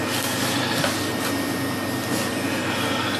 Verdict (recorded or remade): recorded